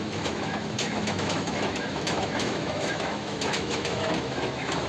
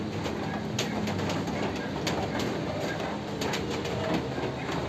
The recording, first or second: second